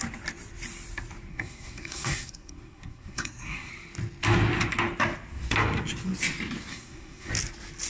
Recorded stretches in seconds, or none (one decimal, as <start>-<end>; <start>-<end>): 0.0-1.3; 3.7-6.7; 7.3-7.9